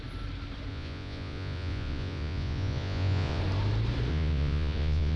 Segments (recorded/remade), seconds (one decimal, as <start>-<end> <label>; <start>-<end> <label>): 0.0-0.7 recorded; 0.7-3.4 remade; 3.4-4.1 recorded; 4.1-5.2 remade